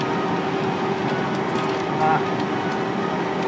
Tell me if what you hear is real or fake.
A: real